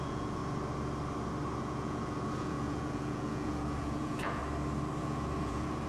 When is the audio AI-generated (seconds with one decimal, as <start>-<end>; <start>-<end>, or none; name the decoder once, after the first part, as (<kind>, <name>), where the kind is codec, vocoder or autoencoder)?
0.0-0.4 (vocoder, Vocos); 1.6-4.4; 5.0-5.9